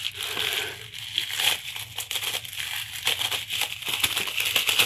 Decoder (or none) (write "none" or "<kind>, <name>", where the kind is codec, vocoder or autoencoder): none